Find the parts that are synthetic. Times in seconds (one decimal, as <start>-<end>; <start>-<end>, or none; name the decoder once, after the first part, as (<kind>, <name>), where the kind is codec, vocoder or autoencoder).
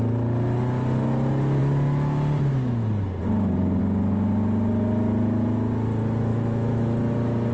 6.3-7.0 (autoencoder, DAC-VAE)